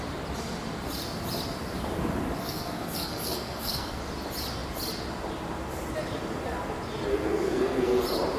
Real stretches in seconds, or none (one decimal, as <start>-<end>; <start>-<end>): 0.0-2.4; 4.0-7.1; 8.0-8.4